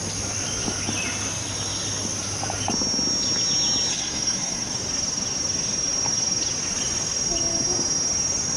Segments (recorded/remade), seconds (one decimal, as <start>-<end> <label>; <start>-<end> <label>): 0.0-3.9 recorded; 3.9-4.7 remade; 4.7-8.6 recorded